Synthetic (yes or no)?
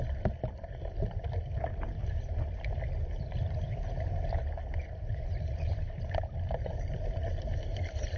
no